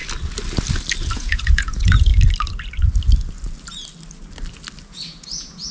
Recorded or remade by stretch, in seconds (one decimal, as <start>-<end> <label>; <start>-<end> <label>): 0.0-1.1 recorded; 1.1-2.1 remade; 2.1-4.9 recorded; 4.9-5.7 remade

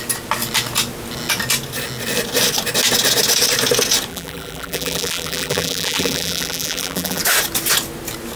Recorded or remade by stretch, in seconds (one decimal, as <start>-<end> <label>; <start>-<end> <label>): 0.0-4.1 recorded; 4.1-7.2 remade; 7.2-8.4 recorded

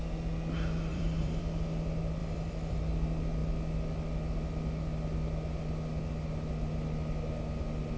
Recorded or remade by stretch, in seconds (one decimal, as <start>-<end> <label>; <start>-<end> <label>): 0.0-0.9 recorded; 0.9-1.4 remade; 1.4-2.2 recorded; 2.2-2.8 remade; 2.8-8.0 recorded

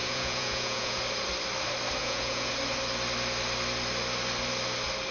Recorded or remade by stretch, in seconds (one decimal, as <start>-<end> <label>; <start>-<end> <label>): 0.0-1.0 remade; 1.0-2.0 recorded; 2.0-2.5 remade; 2.5-5.1 recorded

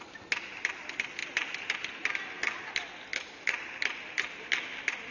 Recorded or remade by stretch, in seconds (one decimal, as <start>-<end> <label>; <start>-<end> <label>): 0.0-5.1 recorded

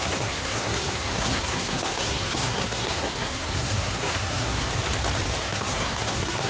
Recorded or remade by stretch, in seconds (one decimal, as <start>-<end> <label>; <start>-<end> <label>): 0.0-4.7 remade; 4.7-5.4 recorded; 5.4-6.5 remade

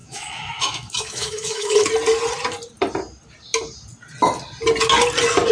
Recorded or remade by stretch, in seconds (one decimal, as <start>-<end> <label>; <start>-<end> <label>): 0.0-1.9 remade; 1.9-5.5 recorded